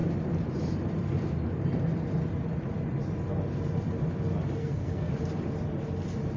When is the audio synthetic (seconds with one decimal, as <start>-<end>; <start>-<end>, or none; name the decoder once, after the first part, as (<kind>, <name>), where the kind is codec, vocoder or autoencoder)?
4.6-5.1 (codec, SNAC)